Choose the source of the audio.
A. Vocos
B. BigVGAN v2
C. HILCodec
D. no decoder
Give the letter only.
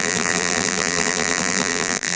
B